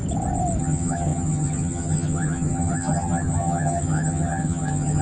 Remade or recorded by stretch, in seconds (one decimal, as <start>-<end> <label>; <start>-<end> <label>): 0.0-0.6 recorded; 0.6-5.0 remade